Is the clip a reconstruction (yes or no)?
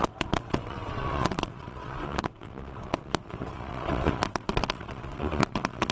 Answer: yes